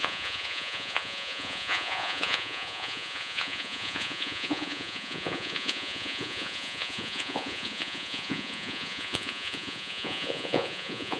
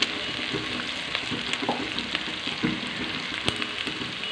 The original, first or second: second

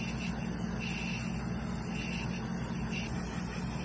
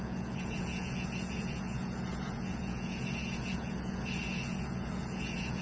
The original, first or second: first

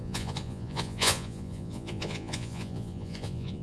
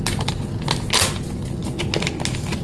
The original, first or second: second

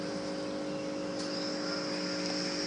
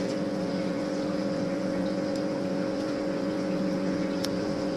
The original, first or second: first